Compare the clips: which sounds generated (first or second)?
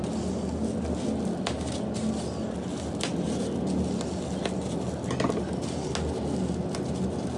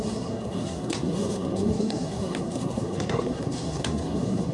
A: second